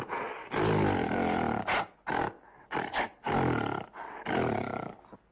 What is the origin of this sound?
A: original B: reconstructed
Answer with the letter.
A